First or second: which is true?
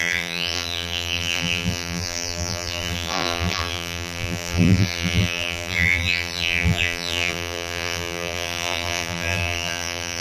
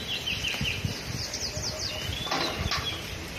second